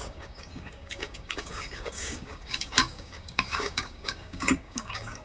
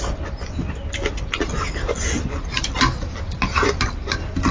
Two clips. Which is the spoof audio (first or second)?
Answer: first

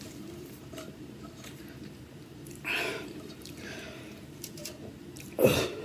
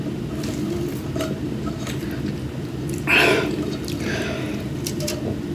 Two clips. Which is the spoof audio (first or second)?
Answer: first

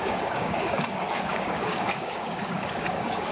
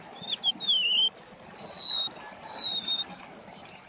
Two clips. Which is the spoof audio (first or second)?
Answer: first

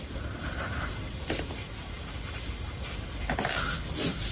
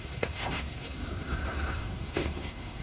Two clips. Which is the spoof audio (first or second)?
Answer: second